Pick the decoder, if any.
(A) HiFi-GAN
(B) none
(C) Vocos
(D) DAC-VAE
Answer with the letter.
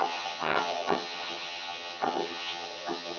A